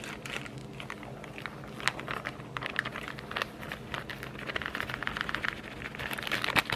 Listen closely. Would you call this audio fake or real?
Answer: real